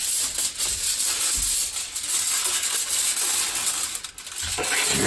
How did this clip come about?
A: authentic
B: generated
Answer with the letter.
A